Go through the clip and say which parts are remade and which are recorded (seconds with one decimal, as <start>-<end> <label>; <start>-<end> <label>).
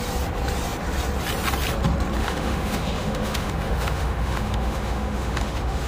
0.0-2.2 recorded; 2.2-5.9 remade